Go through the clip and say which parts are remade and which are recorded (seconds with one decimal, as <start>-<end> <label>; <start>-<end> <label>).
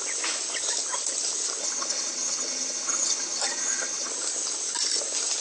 0.0-1.6 recorded; 1.6-4.1 remade; 4.1-5.4 recorded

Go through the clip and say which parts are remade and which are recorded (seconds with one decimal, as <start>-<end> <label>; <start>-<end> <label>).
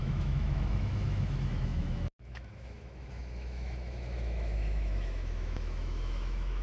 0.0-6.6 remade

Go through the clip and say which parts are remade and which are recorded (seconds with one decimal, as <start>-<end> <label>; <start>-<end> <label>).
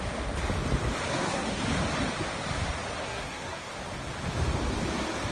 0.0-1.1 recorded; 1.1-1.6 remade; 1.6-3.0 recorded; 3.0-3.7 remade; 3.7-5.3 recorded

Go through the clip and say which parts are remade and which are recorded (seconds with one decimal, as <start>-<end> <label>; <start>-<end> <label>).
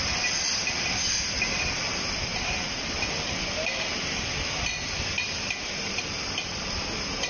0.0-2.3 recorded; 2.3-3.5 remade; 3.5-7.3 recorded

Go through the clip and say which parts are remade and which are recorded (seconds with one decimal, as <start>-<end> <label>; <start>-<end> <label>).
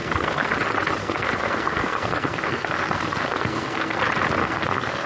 0.0-0.5 remade; 0.5-1.0 recorded; 1.0-4.0 remade; 4.0-4.4 recorded; 4.4-5.1 remade